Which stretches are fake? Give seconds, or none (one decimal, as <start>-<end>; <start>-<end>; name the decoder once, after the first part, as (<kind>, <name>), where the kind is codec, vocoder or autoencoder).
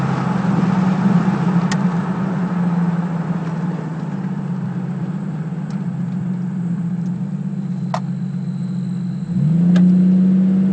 3.9-7.3 (vocoder, BigVGAN v2)